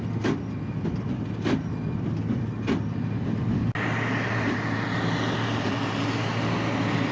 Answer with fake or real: real